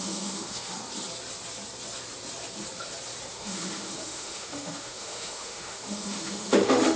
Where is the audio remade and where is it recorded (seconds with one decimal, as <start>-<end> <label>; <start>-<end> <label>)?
0.0-0.7 remade; 0.7-3.3 recorded; 3.3-7.0 remade